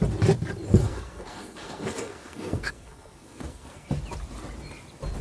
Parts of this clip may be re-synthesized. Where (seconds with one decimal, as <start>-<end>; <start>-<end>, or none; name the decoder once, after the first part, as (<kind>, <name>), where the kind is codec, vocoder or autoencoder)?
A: 0.8-3.9 (codec, SNAC)